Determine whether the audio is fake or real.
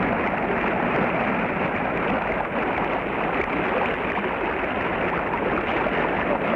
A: real